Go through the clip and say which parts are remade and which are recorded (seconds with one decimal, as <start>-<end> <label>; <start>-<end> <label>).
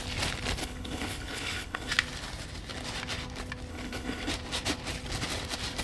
0.0-0.6 recorded; 0.6-1.9 remade; 1.9-3.7 recorded; 3.7-4.3 remade; 4.3-5.8 recorded